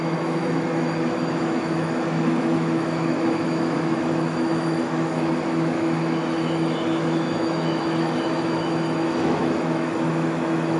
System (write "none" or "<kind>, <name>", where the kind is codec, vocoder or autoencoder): autoencoder, DAC-VAE